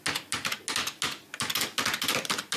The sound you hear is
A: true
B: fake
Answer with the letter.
A